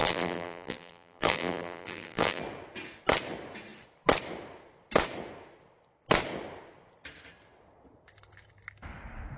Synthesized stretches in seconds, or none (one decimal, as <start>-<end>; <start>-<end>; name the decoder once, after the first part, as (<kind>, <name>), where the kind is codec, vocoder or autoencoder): 0.0-2.4 (vocoder, BigVGAN v2)